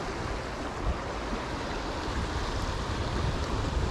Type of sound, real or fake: real